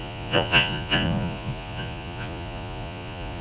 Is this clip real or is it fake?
fake